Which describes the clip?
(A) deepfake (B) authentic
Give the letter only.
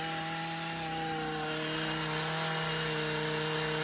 B